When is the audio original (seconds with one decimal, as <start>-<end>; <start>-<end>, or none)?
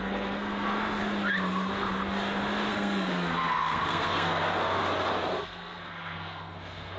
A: 1.0-2.7; 4.8-5.3